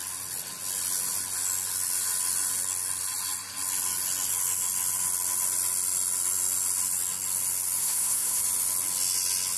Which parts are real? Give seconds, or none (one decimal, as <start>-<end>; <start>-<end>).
0.0-7.8; 8.4-9.6